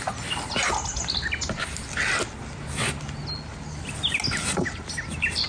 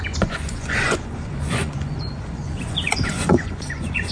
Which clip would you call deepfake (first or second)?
second